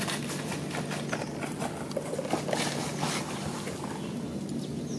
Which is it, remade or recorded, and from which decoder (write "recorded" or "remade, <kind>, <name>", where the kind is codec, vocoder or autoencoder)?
recorded